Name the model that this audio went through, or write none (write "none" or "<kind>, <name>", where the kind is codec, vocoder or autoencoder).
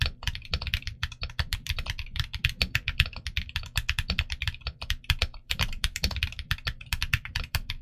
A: vocoder, BigVGAN v2